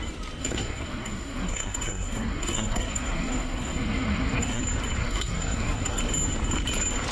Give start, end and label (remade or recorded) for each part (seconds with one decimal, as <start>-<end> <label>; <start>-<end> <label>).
0.0-0.4 recorded; 0.4-4.6 remade; 4.6-5.0 recorded; 5.0-6.0 remade; 6.0-7.1 recorded